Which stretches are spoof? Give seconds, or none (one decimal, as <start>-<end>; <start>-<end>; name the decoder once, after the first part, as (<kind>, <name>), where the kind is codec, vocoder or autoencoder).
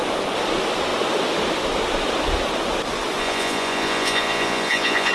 3.2-5.1 (vocoder, Vocos)